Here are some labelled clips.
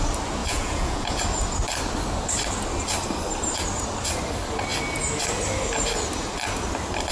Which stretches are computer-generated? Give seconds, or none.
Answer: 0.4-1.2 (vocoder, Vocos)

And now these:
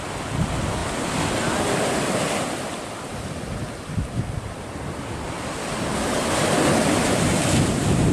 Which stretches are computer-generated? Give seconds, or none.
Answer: none

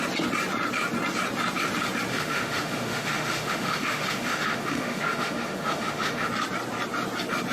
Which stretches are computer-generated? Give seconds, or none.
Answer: 2.1-6.3 (autoencoder, DAC-VAE)